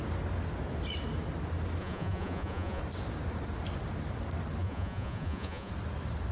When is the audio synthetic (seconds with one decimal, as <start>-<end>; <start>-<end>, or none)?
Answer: 1.8-2.8; 4.6-5.7